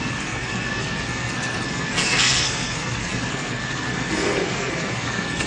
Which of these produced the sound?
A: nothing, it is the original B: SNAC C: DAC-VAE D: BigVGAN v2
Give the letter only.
B